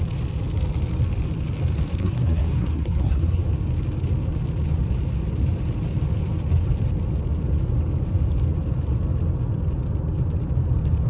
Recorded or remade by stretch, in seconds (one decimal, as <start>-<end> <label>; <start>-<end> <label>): 0.0-1.9 recorded; 1.9-3.4 remade; 3.4-11.1 recorded

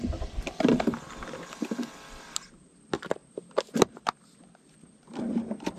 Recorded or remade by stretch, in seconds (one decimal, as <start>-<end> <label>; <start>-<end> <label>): 0.0-5.8 recorded

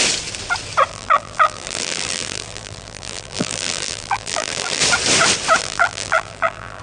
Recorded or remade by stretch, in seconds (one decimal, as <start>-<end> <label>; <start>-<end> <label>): 0.0-0.9 recorded; 0.9-4.8 remade; 4.8-5.6 recorded; 5.6-6.8 remade